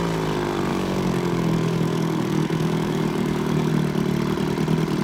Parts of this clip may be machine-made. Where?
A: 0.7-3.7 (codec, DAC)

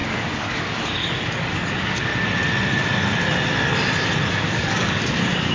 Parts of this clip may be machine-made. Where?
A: 0.0-2.1 (codec, DAC); 4.3-5.5

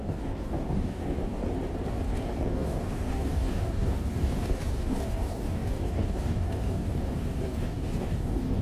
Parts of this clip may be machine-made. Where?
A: 0.0-1.4 (codec, DAC); 1.9-8.6